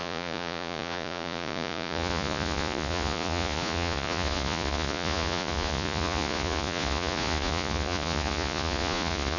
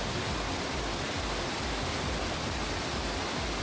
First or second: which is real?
second